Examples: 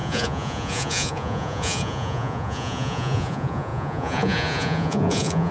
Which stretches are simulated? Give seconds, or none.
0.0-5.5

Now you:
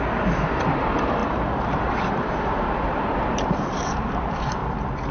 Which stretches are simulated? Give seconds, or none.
0.0-4.6

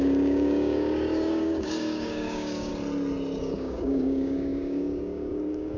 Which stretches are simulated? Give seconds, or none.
0.0-2.7; 3.4-5.8

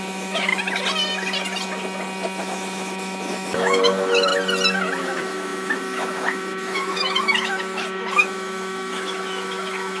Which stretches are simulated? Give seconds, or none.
0.0-0.5; 2.4-4.3; 5.0-10.0